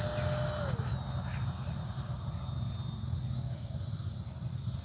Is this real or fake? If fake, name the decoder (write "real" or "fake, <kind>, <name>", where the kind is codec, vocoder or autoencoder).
real